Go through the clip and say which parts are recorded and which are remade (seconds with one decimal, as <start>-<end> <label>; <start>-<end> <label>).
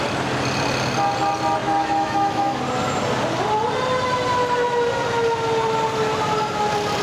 0.0-1.6 recorded; 1.6-2.6 remade; 2.6-7.0 recorded